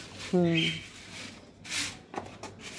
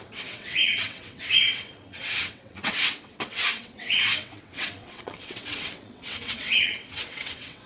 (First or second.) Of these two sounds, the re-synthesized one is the second